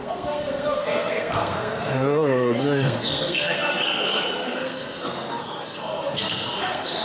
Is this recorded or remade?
remade